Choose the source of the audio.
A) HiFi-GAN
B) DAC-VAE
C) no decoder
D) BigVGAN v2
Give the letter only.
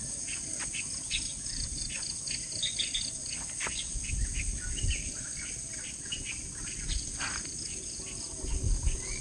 C